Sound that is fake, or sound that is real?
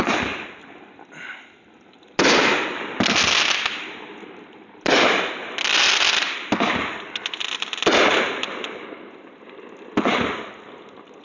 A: real